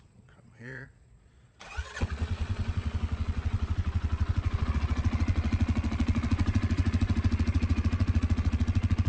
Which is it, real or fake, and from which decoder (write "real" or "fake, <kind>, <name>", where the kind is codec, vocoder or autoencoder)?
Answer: fake, vocoder, Vocos